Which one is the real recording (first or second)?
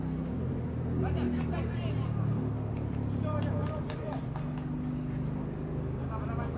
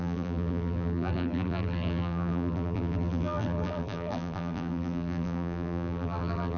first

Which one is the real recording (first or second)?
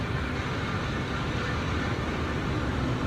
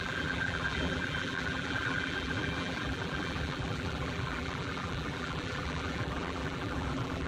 first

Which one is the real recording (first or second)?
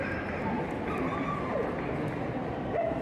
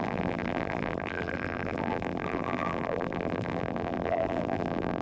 first